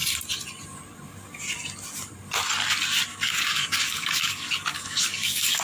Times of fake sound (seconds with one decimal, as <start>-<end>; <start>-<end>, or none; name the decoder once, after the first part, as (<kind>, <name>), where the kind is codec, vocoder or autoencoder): 3.1-5.6 (codec, DAC)